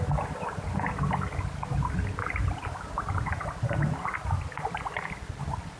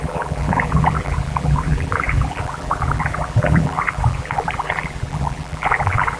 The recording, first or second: first